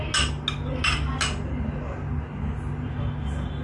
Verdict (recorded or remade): recorded